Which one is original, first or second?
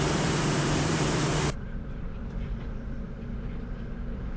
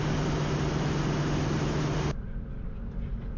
second